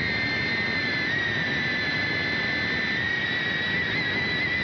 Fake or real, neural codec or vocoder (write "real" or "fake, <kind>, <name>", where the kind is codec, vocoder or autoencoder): real